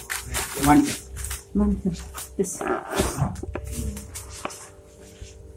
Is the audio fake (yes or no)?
yes